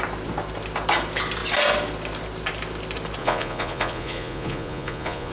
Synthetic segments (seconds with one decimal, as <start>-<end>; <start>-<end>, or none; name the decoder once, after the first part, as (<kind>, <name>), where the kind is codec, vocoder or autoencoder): 3.2-5.3 (vocoder, Vocos)